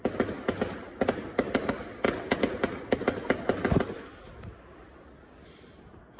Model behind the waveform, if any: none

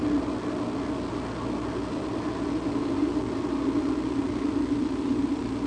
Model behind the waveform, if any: none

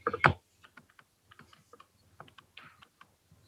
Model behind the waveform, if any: none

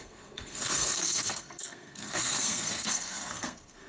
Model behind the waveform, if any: codec, SNAC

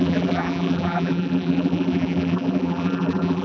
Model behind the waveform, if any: vocoder, BigVGAN v2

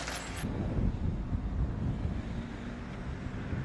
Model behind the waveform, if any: none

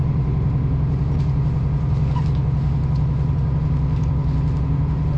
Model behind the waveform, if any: none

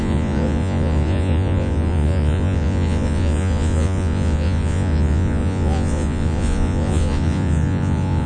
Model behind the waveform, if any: vocoder, Vocos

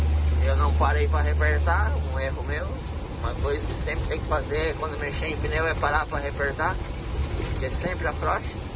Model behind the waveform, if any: none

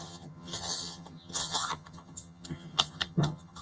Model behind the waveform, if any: vocoder, HiFi-GAN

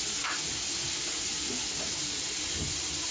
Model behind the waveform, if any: none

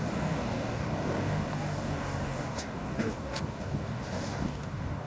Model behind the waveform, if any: codec, DAC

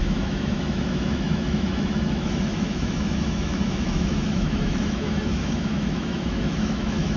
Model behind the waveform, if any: autoencoder, DAC-VAE